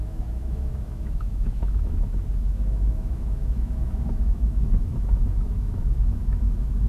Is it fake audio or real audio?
fake